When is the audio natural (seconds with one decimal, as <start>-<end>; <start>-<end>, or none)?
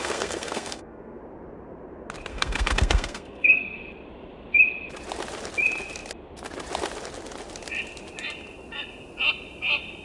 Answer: 1.2-2.3; 3.8-10.0